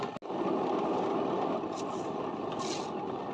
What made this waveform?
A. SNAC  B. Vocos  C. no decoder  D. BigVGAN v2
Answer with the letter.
C